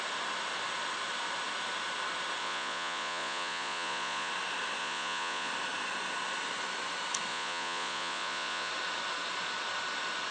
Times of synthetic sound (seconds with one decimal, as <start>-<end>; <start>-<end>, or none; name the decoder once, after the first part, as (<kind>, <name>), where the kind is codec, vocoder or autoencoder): 2.4-4.3 (vocoder, Vocos); 4.8-5.5; 7.3-8.7